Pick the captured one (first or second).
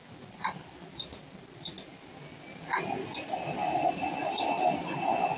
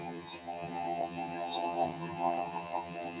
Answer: first